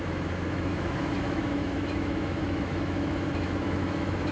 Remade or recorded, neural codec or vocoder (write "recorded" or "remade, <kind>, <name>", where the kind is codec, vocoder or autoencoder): remade, autoencoder, DAC-VAE